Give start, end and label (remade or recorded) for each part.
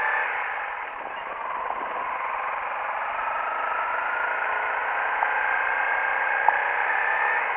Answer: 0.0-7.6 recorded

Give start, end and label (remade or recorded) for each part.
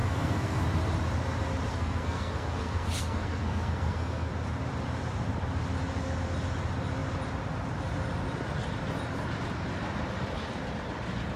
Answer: 0.0-0.6 remade; 0.6-1.7 recorded; 1.7-4.3 remade; 4.3-11.4 recorded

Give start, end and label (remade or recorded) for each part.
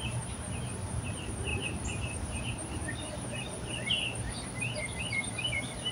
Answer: 0.0-5.9 remade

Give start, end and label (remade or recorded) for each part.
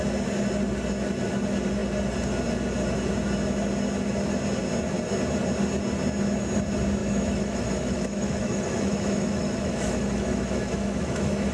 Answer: 0.0-7.0 recorded; 7.0-11.5 remade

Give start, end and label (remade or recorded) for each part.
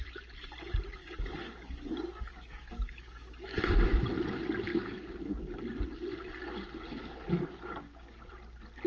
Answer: 0.0-1.0 recorded; 1.0-3.6 remade; 3.6-4.7 recorded; 4.7-5.6 remade; 5.6-7.0 recorded; 7.0-8.3 remade; 8.3-8.9 recorded